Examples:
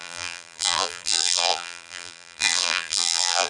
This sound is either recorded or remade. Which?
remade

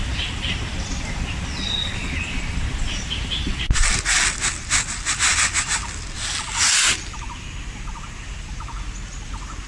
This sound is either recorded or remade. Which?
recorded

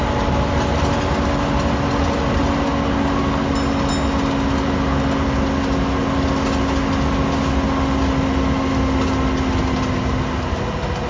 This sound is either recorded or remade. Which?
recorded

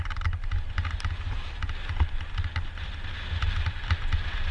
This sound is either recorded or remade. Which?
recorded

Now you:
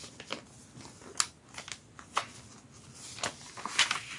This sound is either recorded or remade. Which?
recorded